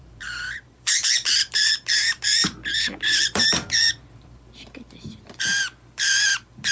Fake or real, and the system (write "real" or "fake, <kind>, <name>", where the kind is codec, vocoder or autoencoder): fake, vocoder, BigVGAN v2